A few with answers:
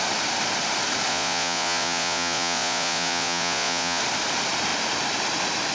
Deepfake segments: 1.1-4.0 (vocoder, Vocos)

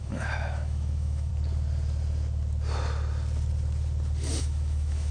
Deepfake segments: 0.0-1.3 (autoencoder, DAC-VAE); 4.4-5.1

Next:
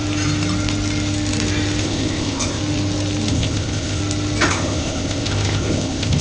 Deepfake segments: 1.8-2.6 (codec, ZipCodec); 3.3-4.0; 4.5-6.2

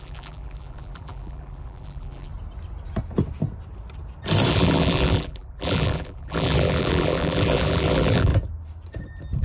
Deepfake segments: 0.0-2.3 (vocoder, BigVGAN v2); 4.5-8.3